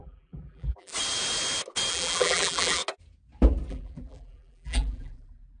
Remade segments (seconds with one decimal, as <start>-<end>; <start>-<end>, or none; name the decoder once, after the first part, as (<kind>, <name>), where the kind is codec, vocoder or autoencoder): 0.0-0.9 (vocoder, BigVGAN v2); 1.9-2.8; 3.7-5.6